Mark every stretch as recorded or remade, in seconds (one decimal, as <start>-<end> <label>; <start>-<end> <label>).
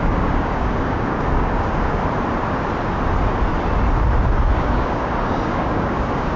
0.0-2.0 remade; 2.0-4.5 recorded; 4.5-6.4 remade